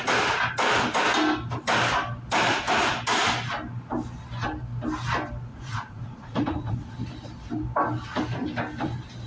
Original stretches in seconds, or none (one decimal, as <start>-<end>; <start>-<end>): 0.0-5.5; 6.9-9.3